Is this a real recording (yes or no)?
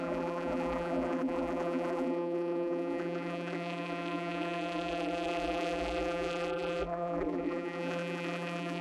no